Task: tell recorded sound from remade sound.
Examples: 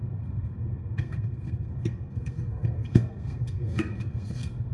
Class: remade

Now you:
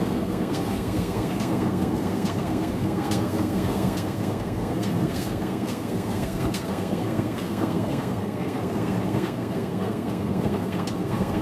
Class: remade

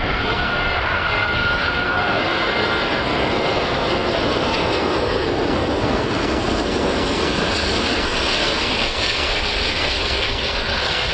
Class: remade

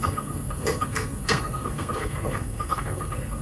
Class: remade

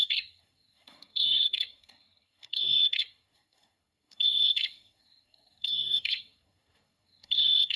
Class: remade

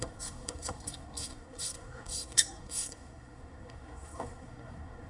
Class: remade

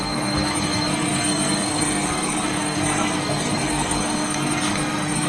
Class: remade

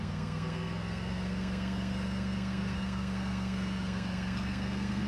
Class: remade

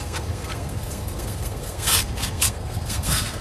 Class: remade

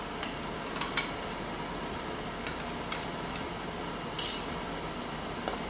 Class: recorded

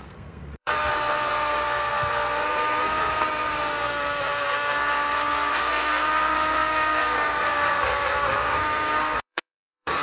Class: remade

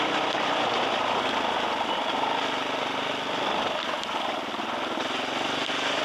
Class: recorded